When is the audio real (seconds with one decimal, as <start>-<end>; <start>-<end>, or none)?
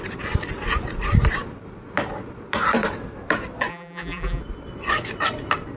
0.0-3.7; 4.4-5.8